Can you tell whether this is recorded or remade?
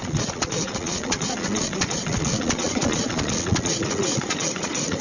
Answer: remade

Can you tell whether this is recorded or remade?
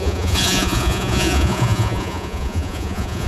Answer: remade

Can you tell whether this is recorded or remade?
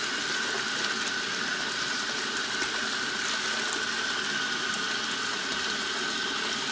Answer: recorded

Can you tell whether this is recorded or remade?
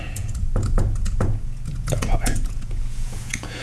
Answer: remade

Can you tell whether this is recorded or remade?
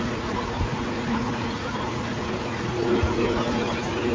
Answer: remade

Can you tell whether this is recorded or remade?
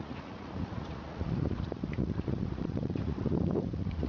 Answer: remade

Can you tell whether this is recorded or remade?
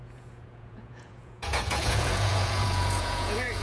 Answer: remade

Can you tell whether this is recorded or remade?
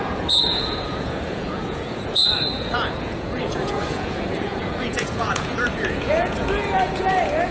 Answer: remade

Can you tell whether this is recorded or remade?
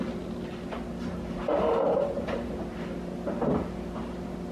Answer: recorded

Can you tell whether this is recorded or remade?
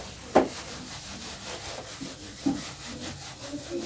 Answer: recorded